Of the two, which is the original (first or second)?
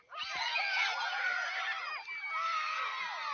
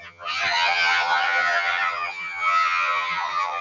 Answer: first